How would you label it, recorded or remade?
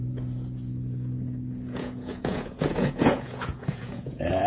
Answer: remade